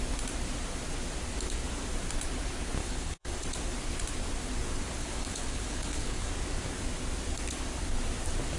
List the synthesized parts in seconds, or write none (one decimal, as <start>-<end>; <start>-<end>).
2.8-3.3; 5.0-6.3